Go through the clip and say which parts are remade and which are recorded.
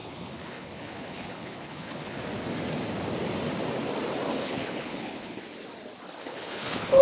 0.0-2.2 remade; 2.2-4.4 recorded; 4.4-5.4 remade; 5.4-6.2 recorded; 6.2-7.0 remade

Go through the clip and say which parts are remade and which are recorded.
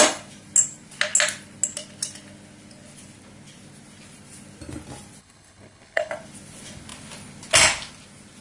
0.0-5.2 recorded; 5.2-6.1 remade; 6.1-8.4 recorded